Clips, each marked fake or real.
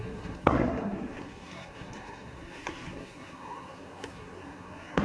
fake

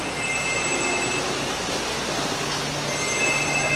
real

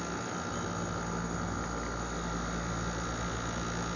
real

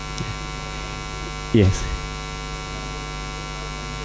real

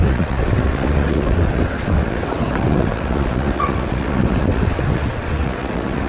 fake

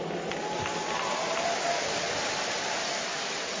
real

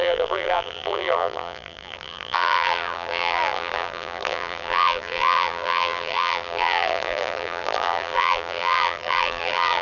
fake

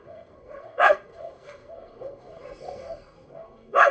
fake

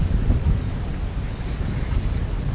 real